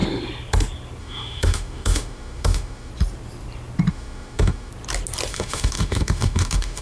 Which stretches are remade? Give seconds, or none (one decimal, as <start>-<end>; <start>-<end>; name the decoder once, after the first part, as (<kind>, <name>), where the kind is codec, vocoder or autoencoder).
1.0-2.9 (autoencoder, DAC-VAE); 3.9-4.7; 5.3-6.8

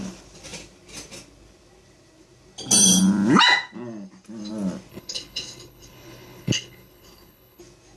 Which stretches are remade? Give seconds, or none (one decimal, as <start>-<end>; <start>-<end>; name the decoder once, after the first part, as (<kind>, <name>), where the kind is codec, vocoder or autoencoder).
4.9-7.6 (codec, HILCodec)